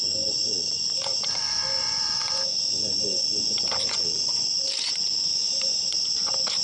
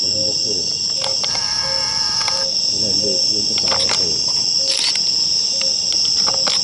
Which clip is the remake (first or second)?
first